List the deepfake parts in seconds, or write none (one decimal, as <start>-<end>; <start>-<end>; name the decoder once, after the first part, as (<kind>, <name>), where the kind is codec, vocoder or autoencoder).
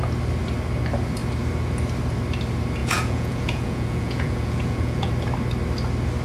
2.8-5.1 (vocoder, Vocos)